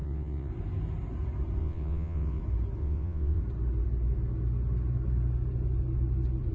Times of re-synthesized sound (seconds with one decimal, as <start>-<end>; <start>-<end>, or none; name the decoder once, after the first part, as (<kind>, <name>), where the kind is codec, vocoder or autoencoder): 0.0-0.5 (vocoder, WaveNeXt); 1.6-2.4; 2.8-3.4